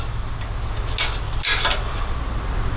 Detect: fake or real real